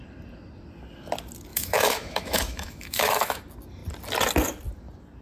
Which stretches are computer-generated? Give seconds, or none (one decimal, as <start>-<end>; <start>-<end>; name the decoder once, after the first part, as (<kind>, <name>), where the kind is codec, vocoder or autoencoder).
1.5-3.4 (autoencoder, DAC-VAE)